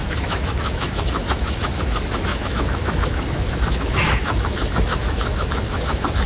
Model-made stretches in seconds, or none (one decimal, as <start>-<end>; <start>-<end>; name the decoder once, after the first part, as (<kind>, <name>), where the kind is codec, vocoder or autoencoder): 0.0-6.3 (autoencoder, DAC-VAE)